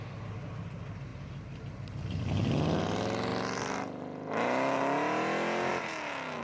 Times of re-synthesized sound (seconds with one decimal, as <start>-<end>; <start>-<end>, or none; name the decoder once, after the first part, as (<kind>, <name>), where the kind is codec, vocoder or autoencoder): none